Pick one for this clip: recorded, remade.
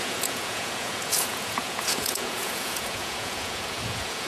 remade